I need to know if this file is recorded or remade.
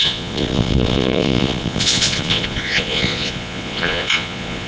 remade